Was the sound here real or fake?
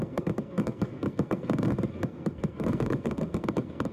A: fake